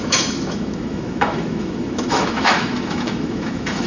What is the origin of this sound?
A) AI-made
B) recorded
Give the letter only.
A